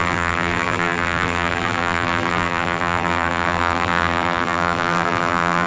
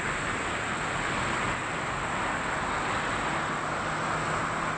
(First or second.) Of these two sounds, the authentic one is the second